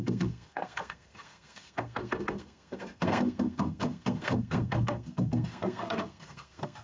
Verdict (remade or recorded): remade